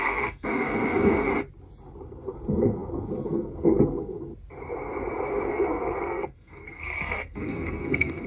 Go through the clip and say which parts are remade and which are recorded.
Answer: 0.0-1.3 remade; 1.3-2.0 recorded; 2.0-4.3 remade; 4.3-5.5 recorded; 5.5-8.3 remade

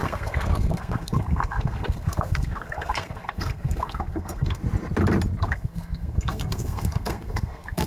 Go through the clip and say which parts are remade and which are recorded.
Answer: 0.0-4.6 remade; 4.6-5.4 recorded; 5.4-7.9 remade

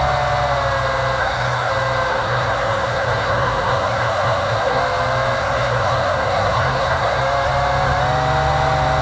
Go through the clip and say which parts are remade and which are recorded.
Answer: 0.0-1.2 recorded; 1.2-1.7 remade; 1.7-2.1 recorded; 2.1-4.8 remade; 4.8-5.4 recorded; 5.4-7.2 remade; 7.2-9.0 recorded

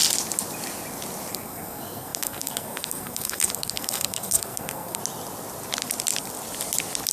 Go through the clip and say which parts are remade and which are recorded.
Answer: 0.0-1.3 recorded; 1.3-5.0 remade; 5.0-7.1 recorded

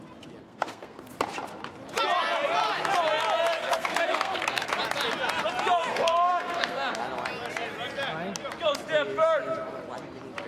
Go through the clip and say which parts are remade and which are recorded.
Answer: 0.0-0.4 recorded; 0.4-1.1 remade; 1.1-3.6 recorded; 3.6-4.7 remade; 4.7-5.9 recorded; 5.9-7.0 remade; 7.0-10.5 recorded

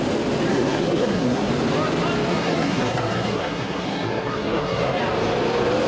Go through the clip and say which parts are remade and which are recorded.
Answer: 0.0-0.5 recorded; 0.5-1.5 remade; 1.5-2.3 recorded; 2.3-5.0 remade; 5.0-5.9 recorded

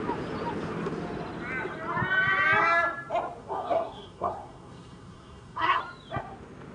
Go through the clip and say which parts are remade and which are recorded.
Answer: 0.0-3.4 recorded; 3.4-5.8 remade; 5.8-6.7 recorded

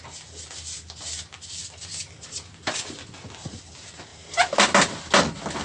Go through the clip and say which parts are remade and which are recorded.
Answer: 0.0-5.6 recorded